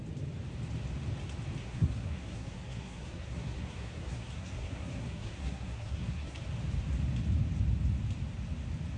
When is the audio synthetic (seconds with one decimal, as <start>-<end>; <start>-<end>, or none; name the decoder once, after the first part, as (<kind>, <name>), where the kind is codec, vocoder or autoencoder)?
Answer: 1.6-6.4 (codec, SNAC)